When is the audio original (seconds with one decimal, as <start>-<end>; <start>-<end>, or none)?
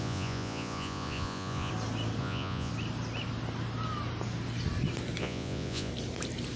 1.7-2.2; 2.7-5.2; 5.9-6.6